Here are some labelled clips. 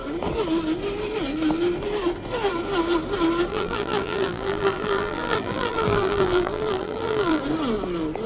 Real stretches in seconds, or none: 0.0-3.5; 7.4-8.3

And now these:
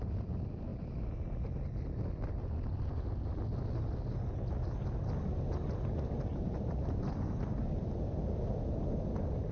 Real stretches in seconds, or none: 0.0-6.3; 7.6-9.5